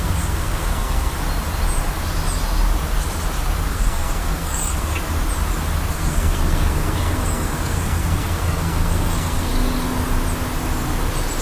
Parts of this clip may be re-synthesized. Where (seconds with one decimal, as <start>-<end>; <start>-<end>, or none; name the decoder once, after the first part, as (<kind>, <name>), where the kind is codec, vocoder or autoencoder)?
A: 0.0-1.1 (codec, SNAC); 3.7-4.9; 5.9-9.5